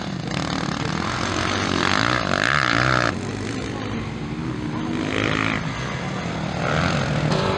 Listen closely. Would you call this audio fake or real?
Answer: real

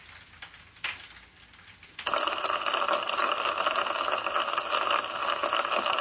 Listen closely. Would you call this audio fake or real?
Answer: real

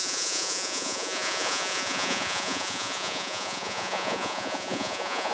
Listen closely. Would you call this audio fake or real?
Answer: fake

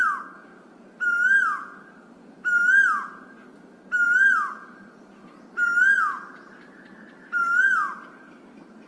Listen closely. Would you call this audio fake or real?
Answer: real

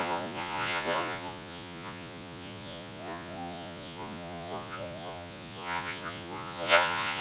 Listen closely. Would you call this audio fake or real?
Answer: fake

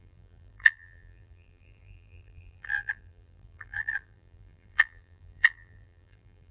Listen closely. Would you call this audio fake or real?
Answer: fake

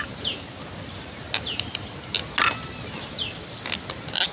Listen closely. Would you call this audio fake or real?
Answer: real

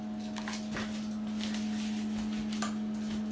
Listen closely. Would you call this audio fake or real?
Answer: real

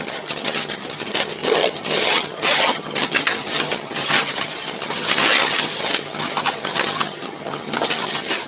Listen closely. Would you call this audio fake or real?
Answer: fake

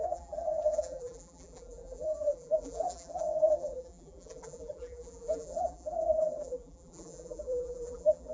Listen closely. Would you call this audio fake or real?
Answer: fake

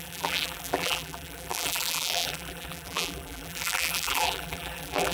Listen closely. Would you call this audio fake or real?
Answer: fake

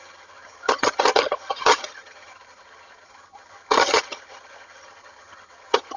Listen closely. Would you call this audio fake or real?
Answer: fake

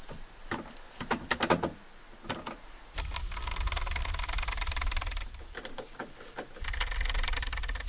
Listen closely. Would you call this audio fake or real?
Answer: real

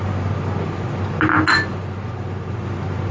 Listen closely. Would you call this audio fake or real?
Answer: real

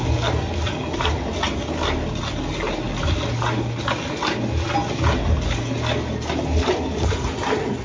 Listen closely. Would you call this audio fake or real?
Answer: real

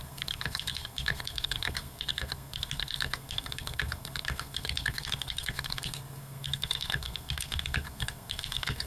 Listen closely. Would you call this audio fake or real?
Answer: fake